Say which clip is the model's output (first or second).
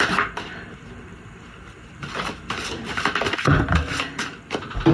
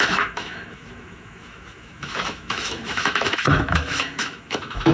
second